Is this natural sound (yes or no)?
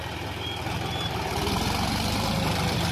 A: yes